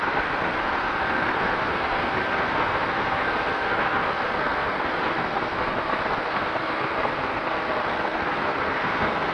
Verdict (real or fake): fake